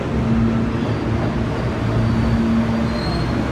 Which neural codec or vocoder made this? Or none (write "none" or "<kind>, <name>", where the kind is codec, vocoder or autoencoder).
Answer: none